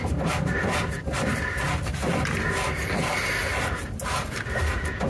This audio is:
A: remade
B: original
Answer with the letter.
B